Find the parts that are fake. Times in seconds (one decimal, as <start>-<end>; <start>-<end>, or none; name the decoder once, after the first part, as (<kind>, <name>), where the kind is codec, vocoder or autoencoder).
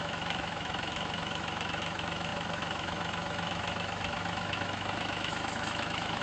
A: 0.0-6.2 (autoencoder, DAC-VAE)